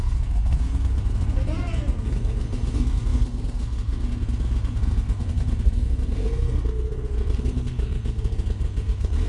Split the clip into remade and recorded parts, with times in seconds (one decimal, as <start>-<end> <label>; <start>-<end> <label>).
0.0-9.3 remade